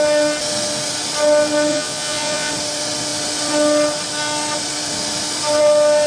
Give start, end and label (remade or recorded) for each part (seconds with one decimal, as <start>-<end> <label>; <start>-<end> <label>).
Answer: 0.0-1.7 recorded; 1.7-2.5 remade; 2.5-6.1 recorded